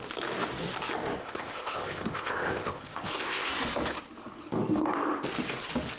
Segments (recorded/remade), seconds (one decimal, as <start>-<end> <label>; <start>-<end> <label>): 0.0-1.2 recorded; 1.2-3.5 remade; 3.5-6.0 recorded